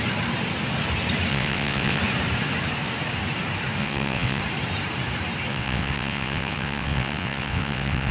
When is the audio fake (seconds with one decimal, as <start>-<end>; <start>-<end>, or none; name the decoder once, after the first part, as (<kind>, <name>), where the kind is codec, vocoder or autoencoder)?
1.3-2.0 (vocoder, WaveNeXt); 3.8-4.4; 5.5-8.1